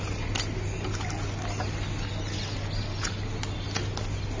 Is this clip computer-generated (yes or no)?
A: no